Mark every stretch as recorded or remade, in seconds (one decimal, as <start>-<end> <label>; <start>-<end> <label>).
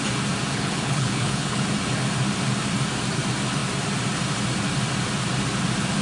0.0-0.5 recorded; 0.5-1.6 remade; 1.6-6.0 recorded